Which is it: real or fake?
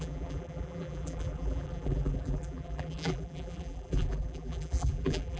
fake